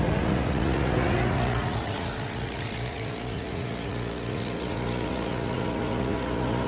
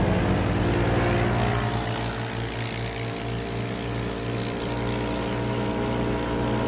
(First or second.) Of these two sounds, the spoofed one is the first